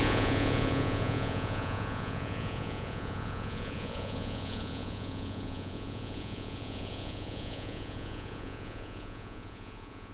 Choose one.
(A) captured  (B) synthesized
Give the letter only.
B